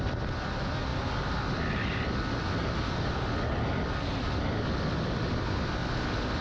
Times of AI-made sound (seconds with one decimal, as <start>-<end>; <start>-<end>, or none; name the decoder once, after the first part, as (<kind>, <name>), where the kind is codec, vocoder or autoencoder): none

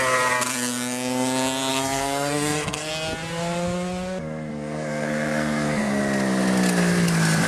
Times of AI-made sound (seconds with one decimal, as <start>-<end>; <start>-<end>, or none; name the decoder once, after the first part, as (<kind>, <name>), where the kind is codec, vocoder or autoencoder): 1.7-2.9 (codec, SNAC); 4.2-6.0

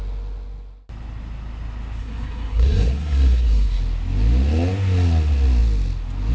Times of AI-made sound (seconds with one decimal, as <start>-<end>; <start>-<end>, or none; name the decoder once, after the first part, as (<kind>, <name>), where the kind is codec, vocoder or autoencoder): 2.0-3.8 (codec, SNAC)

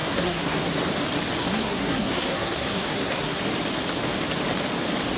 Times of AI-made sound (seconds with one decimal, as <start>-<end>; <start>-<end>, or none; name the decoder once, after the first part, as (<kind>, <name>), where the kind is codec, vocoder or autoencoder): 0.0-0.8 (codec, SNAC); 1.4-3.4

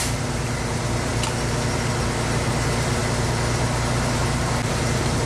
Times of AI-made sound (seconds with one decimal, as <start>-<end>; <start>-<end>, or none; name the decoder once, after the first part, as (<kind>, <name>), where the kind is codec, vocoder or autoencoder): 0.0-1.1 (vocoder, BigVGAN v2); 2.5-3.0; 4.0-5.3